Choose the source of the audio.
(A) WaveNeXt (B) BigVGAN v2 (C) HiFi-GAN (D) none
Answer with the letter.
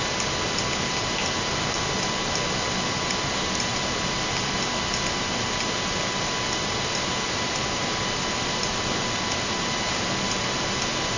D